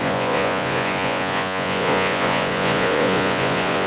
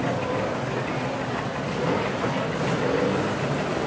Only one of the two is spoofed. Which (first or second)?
first